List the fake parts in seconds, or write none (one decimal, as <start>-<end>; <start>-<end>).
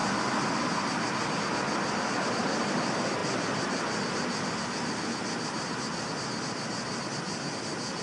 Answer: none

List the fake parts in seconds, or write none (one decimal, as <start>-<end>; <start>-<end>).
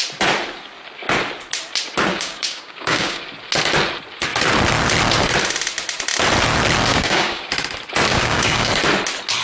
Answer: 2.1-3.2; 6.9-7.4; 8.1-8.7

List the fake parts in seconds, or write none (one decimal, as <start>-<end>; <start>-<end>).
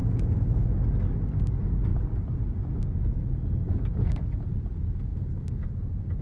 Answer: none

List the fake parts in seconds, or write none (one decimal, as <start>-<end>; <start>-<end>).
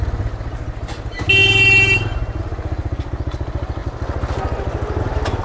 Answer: none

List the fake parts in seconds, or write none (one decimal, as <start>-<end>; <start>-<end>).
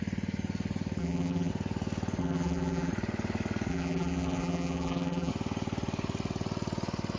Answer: 1.0-1.5; 2.2-2.9; 3.7-5.3